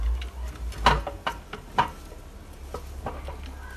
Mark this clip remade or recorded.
recorded